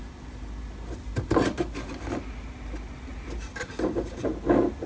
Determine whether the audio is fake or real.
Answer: real